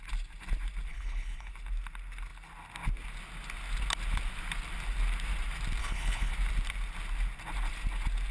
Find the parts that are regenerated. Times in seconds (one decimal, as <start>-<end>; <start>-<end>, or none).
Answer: 0.9-1.5; 5.8-6.3